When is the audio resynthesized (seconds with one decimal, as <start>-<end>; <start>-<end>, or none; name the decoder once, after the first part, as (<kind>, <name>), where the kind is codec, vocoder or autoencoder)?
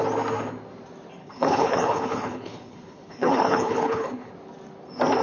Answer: 1.2-4.3 (codec, HILCodec)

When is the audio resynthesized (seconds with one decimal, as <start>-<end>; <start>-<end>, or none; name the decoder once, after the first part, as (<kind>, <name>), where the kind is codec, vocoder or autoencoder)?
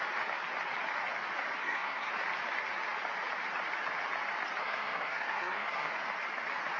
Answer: 1.6-2.1 (codec, SNAC); 4.6-5.9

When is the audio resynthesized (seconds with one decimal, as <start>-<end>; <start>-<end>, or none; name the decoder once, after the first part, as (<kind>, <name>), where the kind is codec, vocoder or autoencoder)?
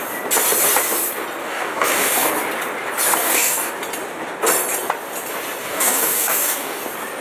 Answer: 1.4-2.3 (codec, DAC); 3.2-3.7; 5.6-6.8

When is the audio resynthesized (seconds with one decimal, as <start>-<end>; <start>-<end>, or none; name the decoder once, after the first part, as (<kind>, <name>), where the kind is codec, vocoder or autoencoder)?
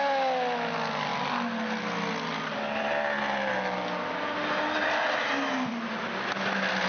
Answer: none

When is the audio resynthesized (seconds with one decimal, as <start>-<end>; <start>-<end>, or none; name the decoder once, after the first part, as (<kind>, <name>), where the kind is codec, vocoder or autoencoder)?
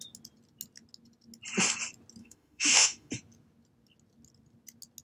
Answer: 2.2-3.1 (autoencoder, DAC-VAE)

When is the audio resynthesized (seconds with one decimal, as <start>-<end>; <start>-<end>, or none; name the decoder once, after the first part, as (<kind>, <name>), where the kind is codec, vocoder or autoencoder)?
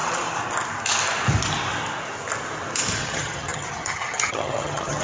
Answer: 3.0-5.0 (vocoder, HiFi-GAN)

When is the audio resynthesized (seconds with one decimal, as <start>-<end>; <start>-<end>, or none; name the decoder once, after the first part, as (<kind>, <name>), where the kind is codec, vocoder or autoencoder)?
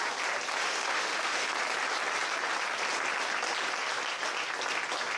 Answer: 0.6-1.5 (autoencoder, DAC-VAE)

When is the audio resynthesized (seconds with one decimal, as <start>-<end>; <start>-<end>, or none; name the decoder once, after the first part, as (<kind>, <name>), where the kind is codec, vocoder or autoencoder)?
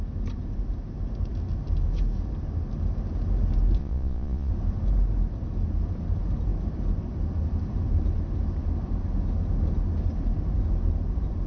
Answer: 3.8-4.5 (vocoder, Vocos)